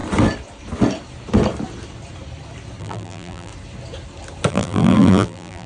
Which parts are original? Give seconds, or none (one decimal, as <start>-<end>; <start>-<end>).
0.0-2.8; 3.5-4.5